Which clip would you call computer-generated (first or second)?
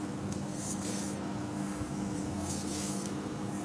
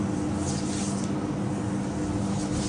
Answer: first